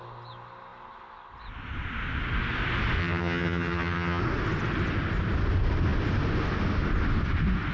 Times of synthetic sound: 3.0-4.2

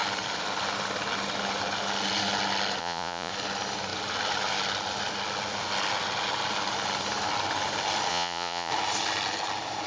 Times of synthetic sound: 2.8-3.3; 8.1-8.7